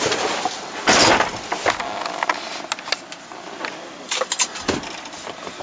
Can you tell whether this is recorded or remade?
recorded